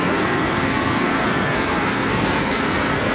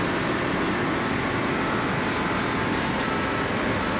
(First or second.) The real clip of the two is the second